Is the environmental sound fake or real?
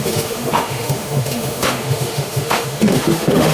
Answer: fake